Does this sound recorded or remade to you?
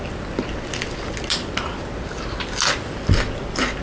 recorded